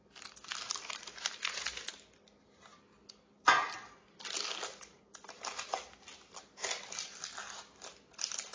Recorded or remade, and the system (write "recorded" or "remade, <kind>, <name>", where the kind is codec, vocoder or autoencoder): recorded